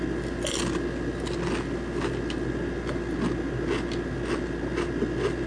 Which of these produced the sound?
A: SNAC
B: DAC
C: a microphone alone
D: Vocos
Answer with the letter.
C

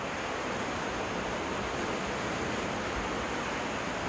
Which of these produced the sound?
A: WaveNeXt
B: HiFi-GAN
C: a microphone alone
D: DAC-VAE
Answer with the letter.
C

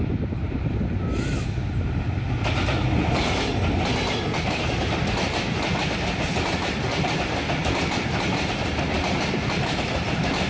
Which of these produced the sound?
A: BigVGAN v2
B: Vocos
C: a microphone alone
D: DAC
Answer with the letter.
C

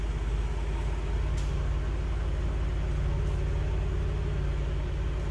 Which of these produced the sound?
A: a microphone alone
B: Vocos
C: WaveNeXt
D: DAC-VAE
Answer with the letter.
A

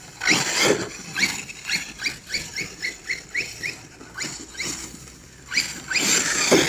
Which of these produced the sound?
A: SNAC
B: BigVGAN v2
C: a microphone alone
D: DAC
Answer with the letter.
C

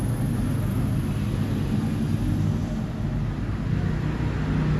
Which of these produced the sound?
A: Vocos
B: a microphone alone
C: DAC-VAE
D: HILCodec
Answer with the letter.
B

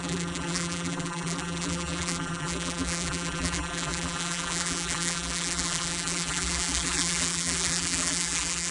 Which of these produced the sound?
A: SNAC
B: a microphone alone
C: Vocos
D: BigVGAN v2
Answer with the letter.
D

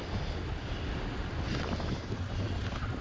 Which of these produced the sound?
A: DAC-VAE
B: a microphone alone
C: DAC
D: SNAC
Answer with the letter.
B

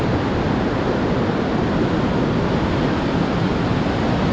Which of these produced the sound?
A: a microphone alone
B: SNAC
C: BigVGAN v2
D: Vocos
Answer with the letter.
A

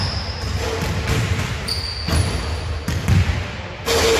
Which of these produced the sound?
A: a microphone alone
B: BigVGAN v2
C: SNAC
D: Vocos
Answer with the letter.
A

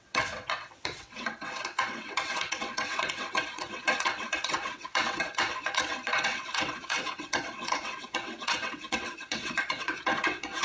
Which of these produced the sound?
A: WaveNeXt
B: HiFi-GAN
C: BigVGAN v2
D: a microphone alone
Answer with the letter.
A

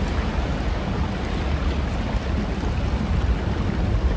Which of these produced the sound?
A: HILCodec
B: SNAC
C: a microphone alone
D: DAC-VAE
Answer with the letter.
C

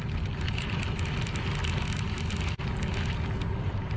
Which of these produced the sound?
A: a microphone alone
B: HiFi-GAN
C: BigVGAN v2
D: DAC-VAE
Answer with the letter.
A